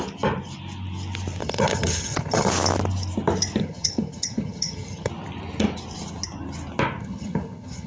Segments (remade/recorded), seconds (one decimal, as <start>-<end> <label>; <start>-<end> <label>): 0.0-1.4 recorded; 1.4-2.5 remade; 2.5-3.6 recorded; 3.6-5.1 remade; 5.1-7.0 recorded; 7.0-7.9 remade